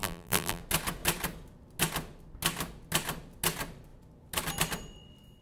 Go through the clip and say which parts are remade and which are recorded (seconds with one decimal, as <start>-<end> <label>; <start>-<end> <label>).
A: 0.0-0.6 remade; 0.6-5.4 recorded